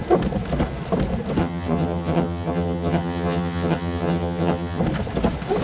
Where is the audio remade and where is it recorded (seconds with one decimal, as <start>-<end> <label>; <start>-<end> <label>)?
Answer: 0.0-1.4 recorded; 1.4-4.8 remade; 4.8-5.6 recorded